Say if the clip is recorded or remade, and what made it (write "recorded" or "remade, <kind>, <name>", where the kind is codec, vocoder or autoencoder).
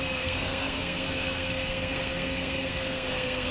remade, codec, SNAC